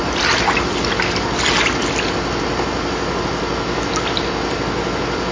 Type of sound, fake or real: real